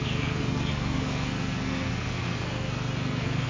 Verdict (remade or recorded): remade